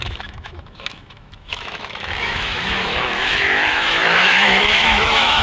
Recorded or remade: remade